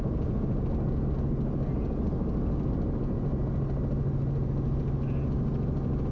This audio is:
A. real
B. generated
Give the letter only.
A